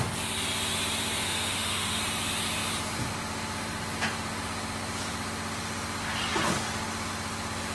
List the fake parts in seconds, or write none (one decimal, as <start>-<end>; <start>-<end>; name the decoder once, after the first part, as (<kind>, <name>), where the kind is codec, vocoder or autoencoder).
1.2-2.0 (autoencoder, DAC-VAE)